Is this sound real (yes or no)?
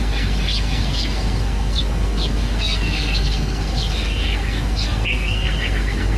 no